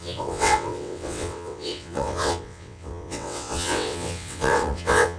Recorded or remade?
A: remade